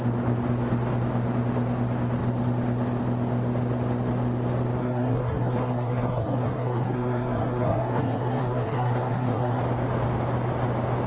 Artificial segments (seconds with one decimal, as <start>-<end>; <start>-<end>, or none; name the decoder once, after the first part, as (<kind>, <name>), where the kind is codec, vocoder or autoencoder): 4.8-9.6 (codec, SNAC)